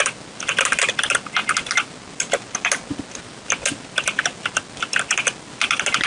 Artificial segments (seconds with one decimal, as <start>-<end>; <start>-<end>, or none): none